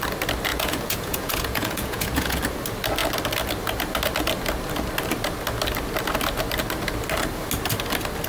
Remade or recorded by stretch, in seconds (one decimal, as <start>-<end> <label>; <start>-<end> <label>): 0.0-0.5 recorded; 0.5-2.4 remade; 2.4-8.3 recorded